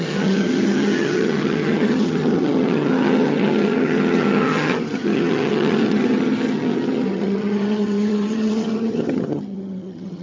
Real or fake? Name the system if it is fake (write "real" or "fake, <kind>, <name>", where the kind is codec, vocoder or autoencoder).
fake, vocoder, HiFi-GAN